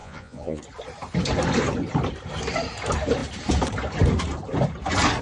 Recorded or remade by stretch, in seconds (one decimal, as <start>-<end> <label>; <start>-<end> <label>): 0.0-0.6 remade; 0.6-5.2 recorded